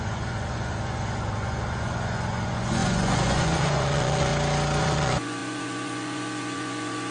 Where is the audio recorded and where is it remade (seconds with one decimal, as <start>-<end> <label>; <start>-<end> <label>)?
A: 0.0-4.3 remade; 4.3-4.8 recorded; 4.8-7.1 remade